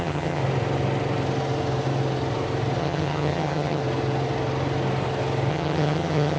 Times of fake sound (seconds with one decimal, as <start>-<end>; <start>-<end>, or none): 0.0-0.4; 2.8-3.8; 5.5-6.4